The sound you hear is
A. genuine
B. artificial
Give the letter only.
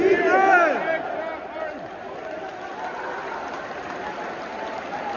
A